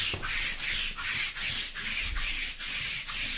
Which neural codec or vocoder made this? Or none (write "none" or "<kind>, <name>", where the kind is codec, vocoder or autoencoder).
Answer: none